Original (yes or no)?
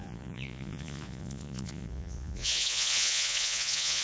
no